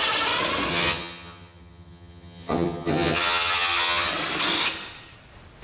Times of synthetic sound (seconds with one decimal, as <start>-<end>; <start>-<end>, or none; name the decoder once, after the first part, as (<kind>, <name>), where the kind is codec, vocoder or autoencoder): 0.7-4.1 (vocoder, HiFi-GAN)